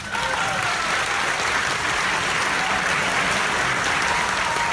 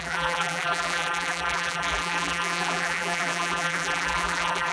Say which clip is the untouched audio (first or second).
first